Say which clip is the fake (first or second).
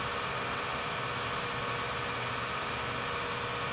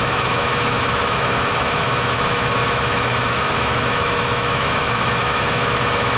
second